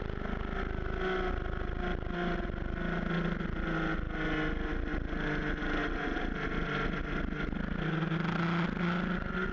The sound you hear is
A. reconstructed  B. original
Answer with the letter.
B